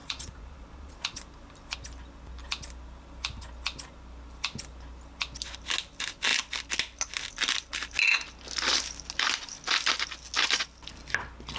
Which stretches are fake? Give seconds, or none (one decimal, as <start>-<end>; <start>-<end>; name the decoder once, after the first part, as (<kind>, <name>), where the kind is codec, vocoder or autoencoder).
0.0-1.2 (vocoder, Vocos)

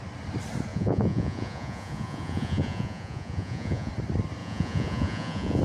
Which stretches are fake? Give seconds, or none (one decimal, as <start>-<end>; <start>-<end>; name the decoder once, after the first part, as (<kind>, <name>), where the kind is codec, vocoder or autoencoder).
0.7-3.9 (vocoder, Vocos); 4.4-5.6

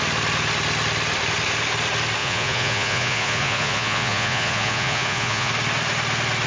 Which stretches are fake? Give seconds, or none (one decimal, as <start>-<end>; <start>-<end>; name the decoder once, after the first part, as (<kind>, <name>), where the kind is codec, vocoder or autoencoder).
2.2-5.5 (vocoder, Vocos)

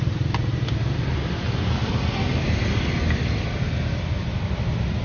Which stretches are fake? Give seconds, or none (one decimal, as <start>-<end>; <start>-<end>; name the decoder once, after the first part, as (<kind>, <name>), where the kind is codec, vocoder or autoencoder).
none

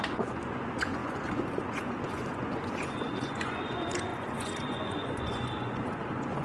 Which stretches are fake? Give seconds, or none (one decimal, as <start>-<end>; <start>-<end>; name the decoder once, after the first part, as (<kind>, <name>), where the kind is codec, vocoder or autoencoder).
0.0-6.4 (vocoder, Vocos)

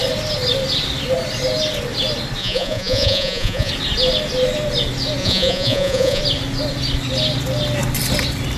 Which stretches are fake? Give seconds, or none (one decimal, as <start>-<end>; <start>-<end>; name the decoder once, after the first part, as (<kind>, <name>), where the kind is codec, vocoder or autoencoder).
2.4-3.7 (vocoder, Vocos); 5.2-6.2

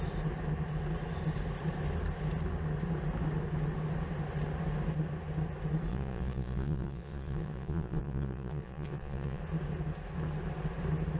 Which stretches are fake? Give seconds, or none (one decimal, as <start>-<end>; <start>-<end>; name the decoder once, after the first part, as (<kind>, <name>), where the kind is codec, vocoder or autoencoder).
5.9-9.4 (vocoder, Vocos)

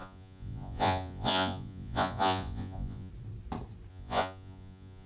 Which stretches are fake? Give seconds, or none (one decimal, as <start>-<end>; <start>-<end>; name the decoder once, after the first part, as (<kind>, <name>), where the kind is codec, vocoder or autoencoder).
0.0-3.1 (vocoder, Vocos); 3.9-5.1